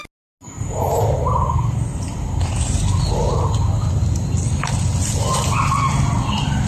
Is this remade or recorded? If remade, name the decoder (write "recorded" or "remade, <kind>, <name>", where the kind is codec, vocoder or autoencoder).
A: recorded